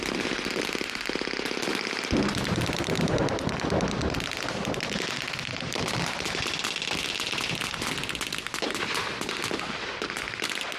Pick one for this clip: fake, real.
real